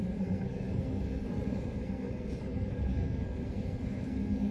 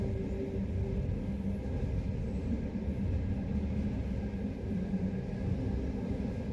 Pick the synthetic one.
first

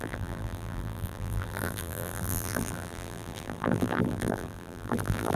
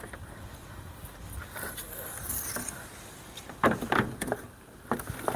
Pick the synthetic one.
first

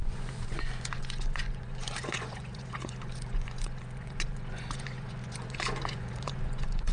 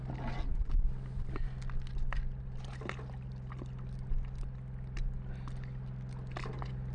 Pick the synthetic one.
first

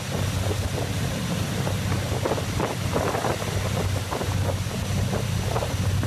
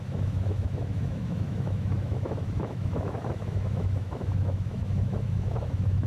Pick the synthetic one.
second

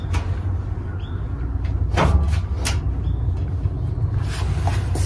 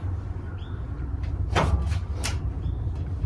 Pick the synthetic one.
second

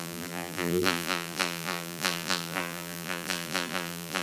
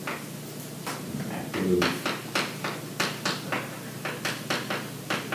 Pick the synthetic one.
first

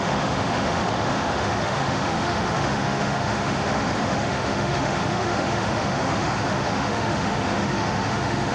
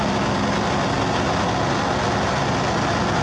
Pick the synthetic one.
first